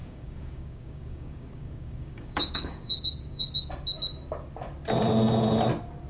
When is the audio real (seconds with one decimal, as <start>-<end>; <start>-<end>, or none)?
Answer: 3.7-6.1